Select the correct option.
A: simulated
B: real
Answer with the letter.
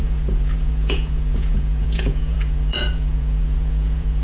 A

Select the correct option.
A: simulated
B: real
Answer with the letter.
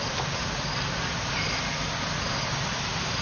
B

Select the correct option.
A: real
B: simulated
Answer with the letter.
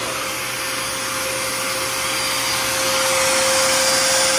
A